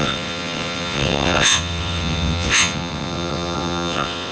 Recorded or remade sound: remade